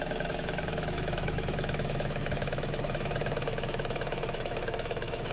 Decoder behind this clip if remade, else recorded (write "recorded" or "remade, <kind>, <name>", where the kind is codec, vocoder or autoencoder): remade, autoencoder, DAC-VAE